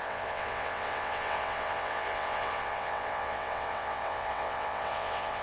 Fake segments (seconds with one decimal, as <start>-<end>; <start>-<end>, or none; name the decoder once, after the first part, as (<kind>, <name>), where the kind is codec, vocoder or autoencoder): 0.0-5.4 (vocoder, WaveNeXt)